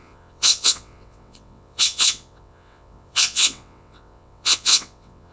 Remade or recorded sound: remade